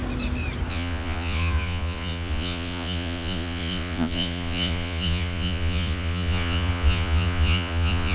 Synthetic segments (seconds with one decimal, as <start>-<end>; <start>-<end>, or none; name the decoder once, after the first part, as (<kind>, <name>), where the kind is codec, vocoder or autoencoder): 0.7-8.1 (vocoder, Vocos)